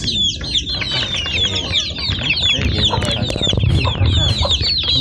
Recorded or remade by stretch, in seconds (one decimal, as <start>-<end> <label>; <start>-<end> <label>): 0.0-5.0 recorded